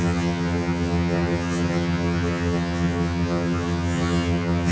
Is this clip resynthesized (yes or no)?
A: yes